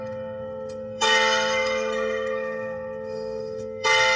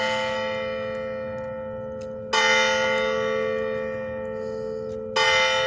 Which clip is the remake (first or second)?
first